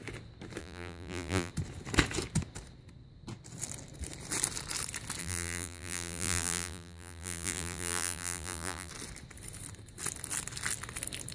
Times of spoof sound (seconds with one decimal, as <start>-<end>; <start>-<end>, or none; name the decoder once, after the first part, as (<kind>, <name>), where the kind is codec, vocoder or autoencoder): 0.6-1.5 (vocoder, BigVGAN v2); 5.2-8.9